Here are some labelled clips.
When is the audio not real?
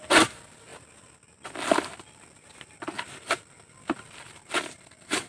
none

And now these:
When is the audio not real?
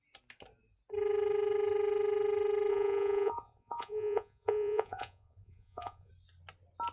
2.7-6.1 (vocoder, Vocos)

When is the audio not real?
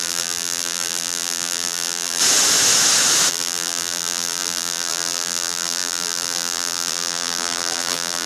0.0-2.2 (vocoder, BigVGAN v2); 3.3-8.3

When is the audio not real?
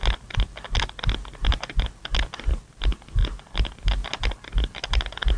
3.2-3.7 (vocoder, BigVGAN v2)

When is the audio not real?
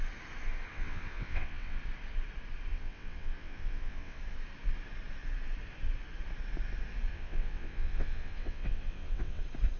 0.7-1.8 (vocoder, WaveNeXt); 2.7-4.2; 7.1-9.4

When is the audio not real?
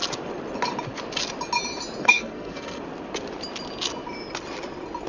2.0-2.8 (codec, SNAC)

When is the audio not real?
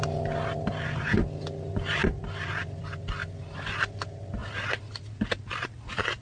none